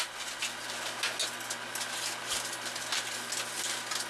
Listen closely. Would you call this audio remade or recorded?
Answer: recorded